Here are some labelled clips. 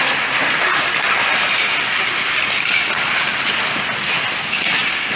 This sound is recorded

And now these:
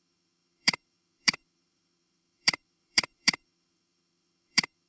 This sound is remade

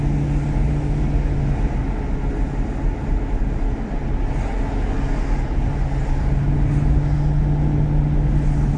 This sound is recorded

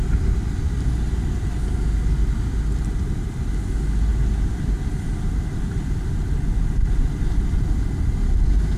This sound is recorded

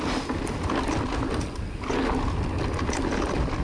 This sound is recorded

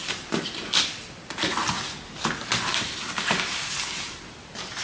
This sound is recorded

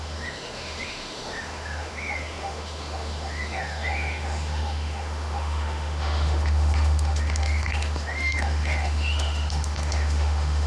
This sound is remade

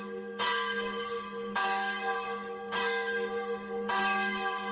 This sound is remade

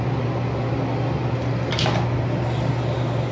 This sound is recorded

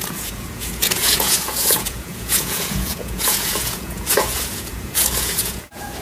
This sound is remade